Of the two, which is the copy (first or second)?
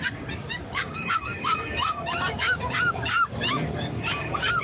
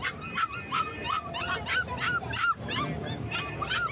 first